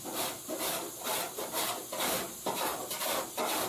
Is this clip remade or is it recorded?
remade